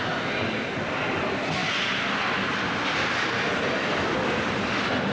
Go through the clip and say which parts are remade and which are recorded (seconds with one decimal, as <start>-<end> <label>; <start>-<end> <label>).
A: 0.0-5.1 recorded